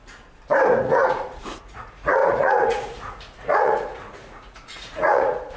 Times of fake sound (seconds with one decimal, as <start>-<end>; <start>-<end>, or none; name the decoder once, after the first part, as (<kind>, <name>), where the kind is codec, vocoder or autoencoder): 0.8-5.6 (vocoder, Vocos)